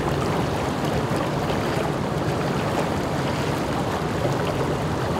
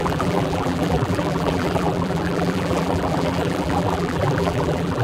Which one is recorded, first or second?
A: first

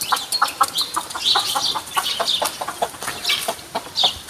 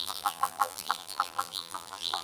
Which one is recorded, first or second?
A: first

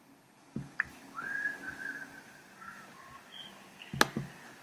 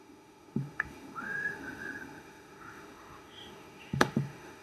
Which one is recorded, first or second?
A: first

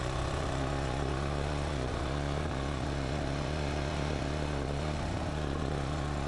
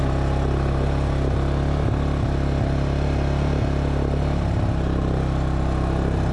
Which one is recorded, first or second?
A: second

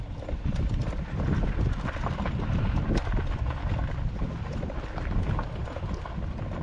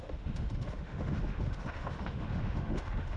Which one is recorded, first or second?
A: first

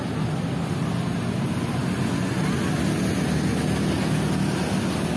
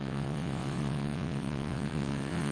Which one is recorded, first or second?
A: first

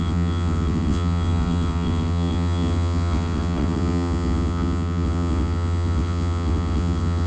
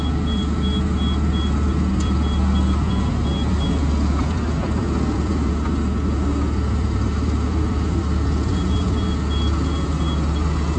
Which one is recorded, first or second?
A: second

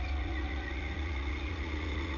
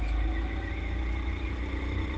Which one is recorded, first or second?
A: second